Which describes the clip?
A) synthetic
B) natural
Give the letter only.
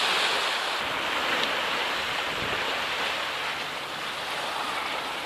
B